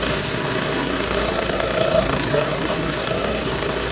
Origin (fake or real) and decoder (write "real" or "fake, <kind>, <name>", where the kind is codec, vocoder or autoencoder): fake, codec, SNAC